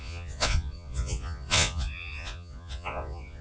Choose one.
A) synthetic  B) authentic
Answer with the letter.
A